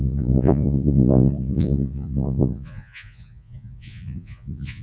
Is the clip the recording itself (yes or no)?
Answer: no